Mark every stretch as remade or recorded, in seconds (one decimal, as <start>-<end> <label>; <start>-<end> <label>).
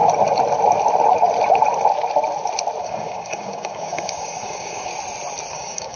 0.0-2.8 recorded; 2.8-4.9 remade; 4.9-5.5 recorded; 5.5-6.0 remade